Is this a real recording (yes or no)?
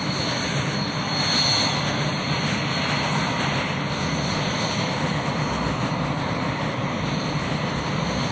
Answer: yes